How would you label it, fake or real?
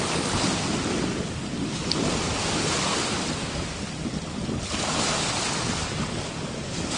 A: real